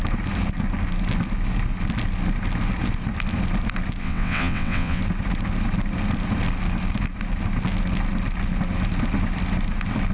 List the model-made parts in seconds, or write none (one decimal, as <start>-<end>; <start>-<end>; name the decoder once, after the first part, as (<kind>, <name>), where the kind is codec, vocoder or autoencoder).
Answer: 4.0-5.0 (vocoder, WaveNeXt)